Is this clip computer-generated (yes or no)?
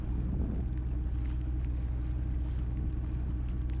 no